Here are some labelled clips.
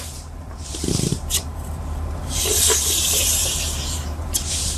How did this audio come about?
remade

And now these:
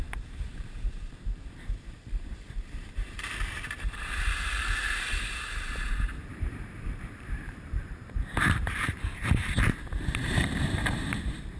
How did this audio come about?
remade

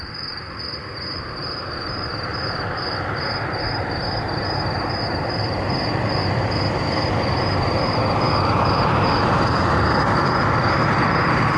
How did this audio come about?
remade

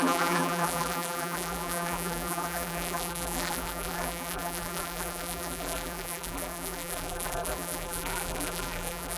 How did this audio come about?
remade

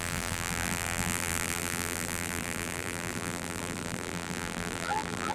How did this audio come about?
remade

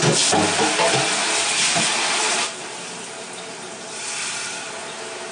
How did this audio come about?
recorded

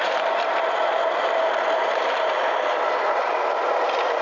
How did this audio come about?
recorded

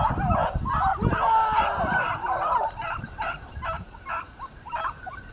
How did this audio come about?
remade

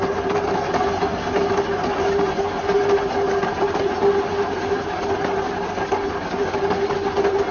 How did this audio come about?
recorded